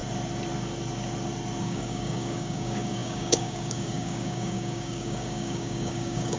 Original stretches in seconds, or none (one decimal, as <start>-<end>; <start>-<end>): 0.0-1.6

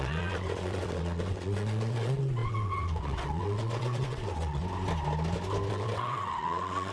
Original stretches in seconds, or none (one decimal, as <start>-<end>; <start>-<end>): 4.6-5.7

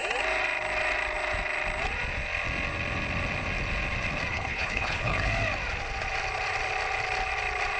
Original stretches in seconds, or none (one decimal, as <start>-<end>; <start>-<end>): 0.0-4.3; 5.3-7.8

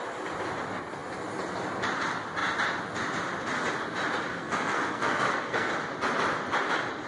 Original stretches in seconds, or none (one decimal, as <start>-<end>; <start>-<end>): 0.0-4.3; 5.7-7.1

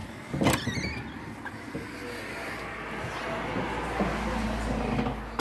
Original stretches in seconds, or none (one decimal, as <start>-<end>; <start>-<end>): 0.0-5.4

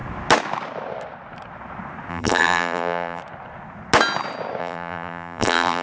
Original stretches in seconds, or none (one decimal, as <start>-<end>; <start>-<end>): 0.0-2.1; 3.2-4.6